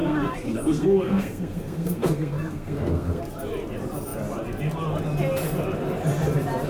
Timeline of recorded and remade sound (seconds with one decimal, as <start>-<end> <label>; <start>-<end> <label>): 0.0-3.2 remade; 3.2-6.7 recorded